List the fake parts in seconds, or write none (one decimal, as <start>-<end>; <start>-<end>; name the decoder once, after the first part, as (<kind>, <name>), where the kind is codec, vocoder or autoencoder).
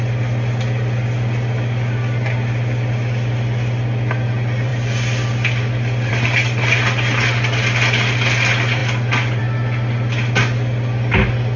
none